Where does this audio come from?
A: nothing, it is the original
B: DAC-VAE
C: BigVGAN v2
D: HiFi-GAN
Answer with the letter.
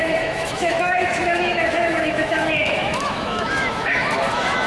B